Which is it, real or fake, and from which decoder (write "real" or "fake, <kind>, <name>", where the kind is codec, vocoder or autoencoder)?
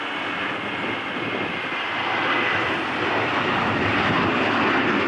real